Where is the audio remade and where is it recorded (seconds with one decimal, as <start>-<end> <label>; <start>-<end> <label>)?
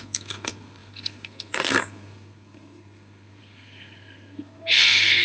0.0-5.2 remade